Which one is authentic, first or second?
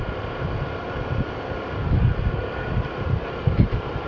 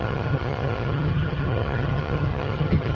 first